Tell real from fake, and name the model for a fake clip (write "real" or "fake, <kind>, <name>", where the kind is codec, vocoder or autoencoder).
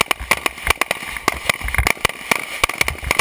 real